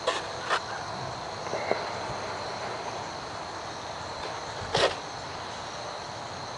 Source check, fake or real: real